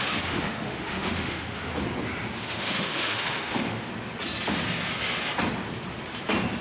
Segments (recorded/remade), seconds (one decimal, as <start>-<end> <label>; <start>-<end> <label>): 0.0-1.7 remade; 1.7-2.4 recorded; 2.4-3.9 remade; 3.9-6.6 recorded